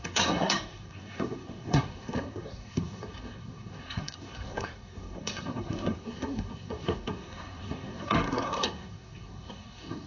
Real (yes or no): no